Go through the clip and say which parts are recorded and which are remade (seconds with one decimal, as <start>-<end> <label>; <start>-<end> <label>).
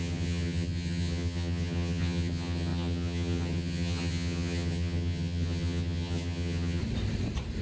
0.0-6.8 remade; 6.8-7.6 recorded